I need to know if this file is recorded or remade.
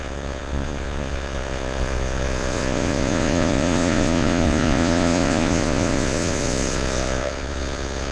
remade